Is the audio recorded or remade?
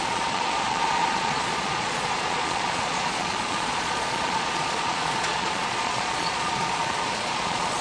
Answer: remade